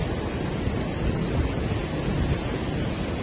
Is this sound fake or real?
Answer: real